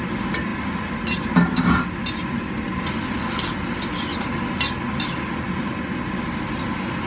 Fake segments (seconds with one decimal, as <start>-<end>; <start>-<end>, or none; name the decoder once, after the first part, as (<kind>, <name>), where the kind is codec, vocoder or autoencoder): none